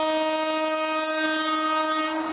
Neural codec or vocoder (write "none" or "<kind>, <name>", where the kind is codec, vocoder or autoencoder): none